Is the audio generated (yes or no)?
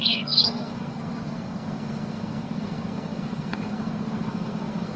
yes